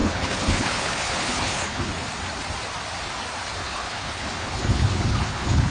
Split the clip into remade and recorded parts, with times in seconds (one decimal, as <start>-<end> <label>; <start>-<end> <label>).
0.0-1.9 remade; 1.9-3.6 recorded; 3.6-5.7 remade